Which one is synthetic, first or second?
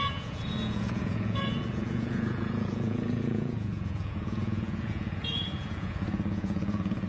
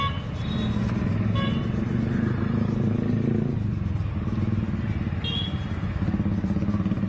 first